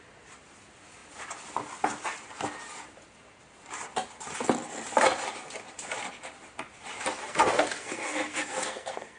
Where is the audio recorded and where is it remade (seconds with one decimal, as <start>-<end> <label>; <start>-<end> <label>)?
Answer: 0.0-7.2 recorded; 7.2-9.2 remade